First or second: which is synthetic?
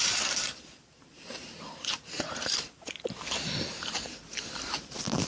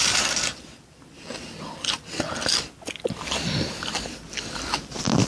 first